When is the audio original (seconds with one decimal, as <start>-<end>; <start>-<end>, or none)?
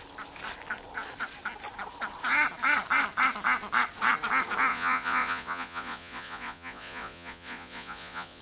0.0-4.7